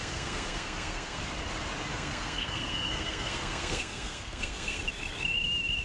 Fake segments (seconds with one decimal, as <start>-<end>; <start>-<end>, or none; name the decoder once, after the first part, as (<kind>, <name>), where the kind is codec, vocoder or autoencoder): 0.0-1.2 (codec, SNAC); 1.9-4.8